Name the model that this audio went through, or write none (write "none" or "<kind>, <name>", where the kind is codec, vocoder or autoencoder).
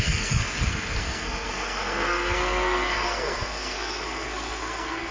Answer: codec, SNAC